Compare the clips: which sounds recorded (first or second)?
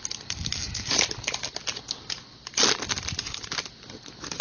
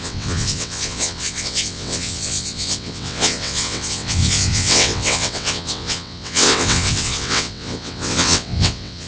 first